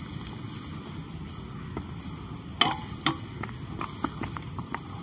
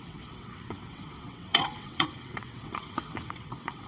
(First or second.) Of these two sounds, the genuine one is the first